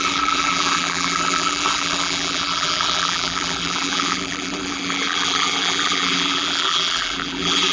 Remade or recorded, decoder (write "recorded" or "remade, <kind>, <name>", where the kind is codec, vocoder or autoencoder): remade, vocoder, BigVGAN v2